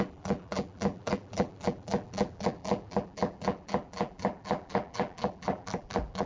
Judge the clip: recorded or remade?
remade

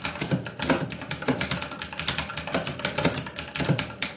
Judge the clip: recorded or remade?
recorded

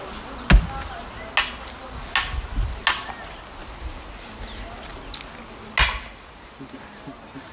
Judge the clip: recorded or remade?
recorded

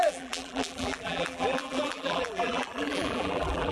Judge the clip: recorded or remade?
remade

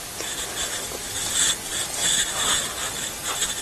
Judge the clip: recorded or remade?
recorded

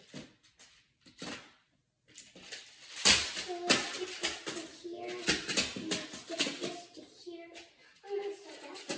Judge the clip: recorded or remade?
recorded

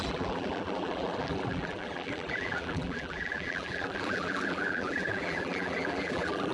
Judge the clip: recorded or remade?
remade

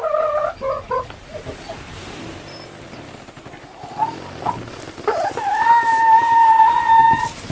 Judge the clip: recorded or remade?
remade